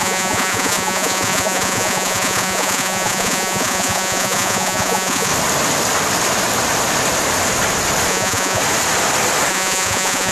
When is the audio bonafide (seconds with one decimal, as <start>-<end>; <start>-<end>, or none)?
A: 5.3-8.1; 8.6-9.5